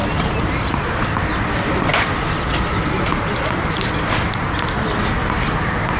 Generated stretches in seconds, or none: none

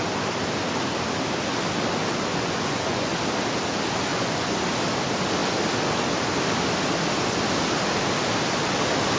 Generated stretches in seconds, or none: 2.3-3.1 (vocoder, Vocos); 4.1-4.6

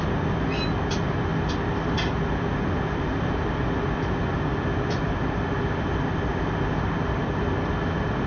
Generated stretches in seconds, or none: none